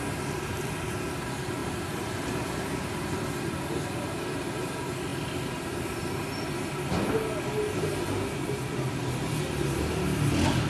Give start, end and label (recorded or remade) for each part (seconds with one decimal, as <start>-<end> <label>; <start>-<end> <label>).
0.0-10.7 recorded